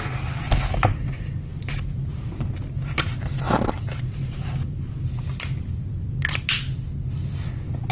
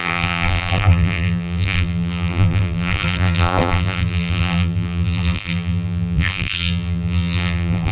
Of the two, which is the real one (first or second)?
first